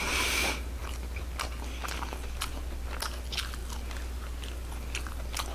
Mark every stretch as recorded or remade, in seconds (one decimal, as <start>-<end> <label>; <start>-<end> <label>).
0.0-5.5 recorded